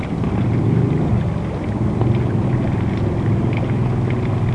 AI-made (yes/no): no